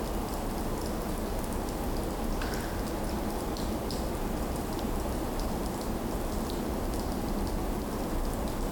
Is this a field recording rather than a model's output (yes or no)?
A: yes